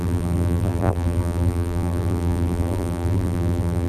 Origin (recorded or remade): remade